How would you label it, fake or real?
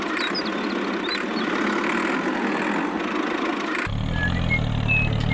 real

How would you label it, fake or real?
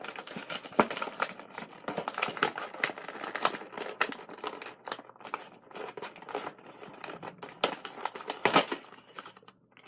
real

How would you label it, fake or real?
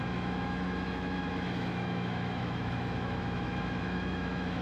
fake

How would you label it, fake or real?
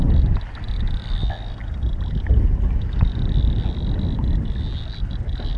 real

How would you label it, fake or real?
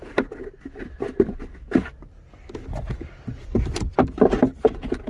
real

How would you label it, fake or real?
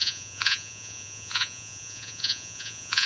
fake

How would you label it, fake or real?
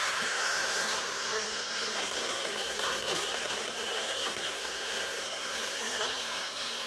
fake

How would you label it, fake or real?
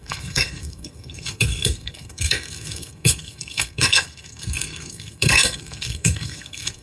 fake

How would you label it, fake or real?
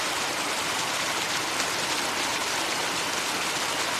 real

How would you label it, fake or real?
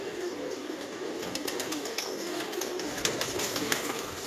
fake